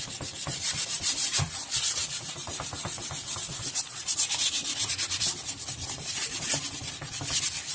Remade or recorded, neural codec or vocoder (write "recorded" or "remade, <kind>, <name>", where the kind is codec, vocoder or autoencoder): recorded